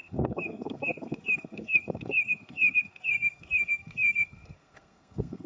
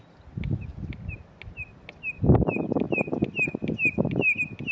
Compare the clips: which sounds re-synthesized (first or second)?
first